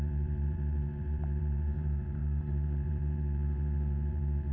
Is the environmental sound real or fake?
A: fake